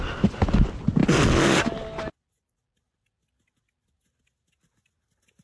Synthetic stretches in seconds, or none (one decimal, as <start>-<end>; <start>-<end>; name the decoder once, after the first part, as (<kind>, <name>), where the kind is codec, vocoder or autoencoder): none